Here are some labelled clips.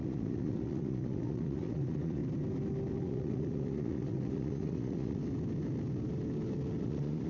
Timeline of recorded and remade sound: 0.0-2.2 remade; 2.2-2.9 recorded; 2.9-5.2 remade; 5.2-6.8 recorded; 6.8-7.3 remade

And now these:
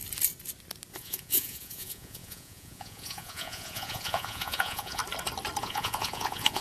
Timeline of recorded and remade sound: 0.0-0.9 recorded; 0.9-5.0 remade; 5.0-5.6 recorded; 5.6-6.6 remade